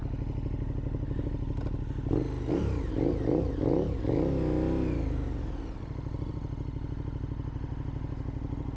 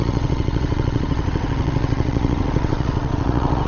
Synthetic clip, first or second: second